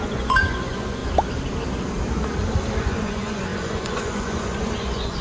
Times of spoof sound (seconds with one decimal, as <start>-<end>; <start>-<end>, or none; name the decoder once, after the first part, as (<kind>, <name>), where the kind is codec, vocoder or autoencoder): 0.0-1.0 (vocoder, Vocos); 2.8-5.2